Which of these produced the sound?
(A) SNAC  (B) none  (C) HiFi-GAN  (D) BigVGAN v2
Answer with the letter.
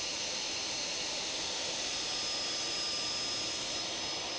B